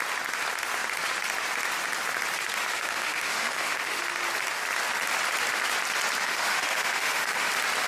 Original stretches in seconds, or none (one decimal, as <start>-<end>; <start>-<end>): 0.0-2.6; 4.0-6.3; 7.5-7.9